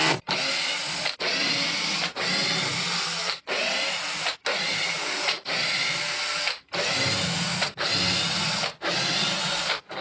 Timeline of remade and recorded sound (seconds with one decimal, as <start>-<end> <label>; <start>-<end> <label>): 0.0-4.5 recorded; 4.5-5.5 remade; 5.5-10.0 recorded